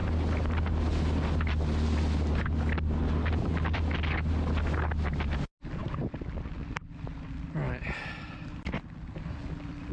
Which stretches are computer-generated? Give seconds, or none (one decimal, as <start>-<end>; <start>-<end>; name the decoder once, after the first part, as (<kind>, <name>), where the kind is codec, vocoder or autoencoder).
none